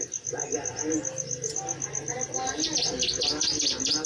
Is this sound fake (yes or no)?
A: no